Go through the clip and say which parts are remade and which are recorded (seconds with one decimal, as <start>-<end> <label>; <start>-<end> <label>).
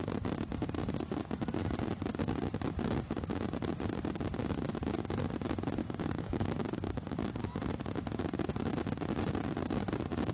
0.0-5.8 recorded; 5.8-7.4 remade; 7.4-10.3 recorded